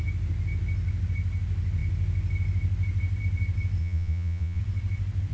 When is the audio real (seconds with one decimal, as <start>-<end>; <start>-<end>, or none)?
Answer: 0.0-3.8; 4.6-5.3